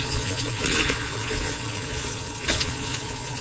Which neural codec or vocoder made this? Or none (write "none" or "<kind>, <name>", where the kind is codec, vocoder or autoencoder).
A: vocoder, Vocos